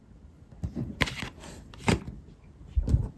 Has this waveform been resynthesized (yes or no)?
no